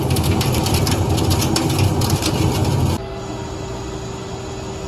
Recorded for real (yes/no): yes